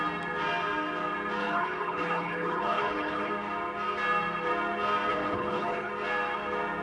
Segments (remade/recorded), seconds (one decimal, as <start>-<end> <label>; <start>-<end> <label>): 0.0-1.4 recorded; 1.4-3.3 remade; 3.3-5.1 recorded; 5.1-5.9 remade; 5.9-6.8 recorded